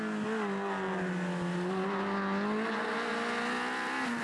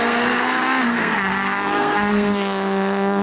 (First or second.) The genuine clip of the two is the first